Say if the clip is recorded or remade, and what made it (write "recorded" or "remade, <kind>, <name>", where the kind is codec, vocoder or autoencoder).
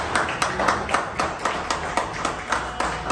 recorded